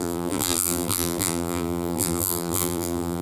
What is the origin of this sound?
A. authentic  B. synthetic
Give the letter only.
B